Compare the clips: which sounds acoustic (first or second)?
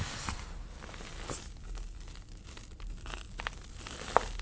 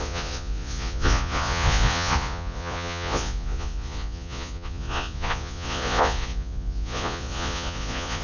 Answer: first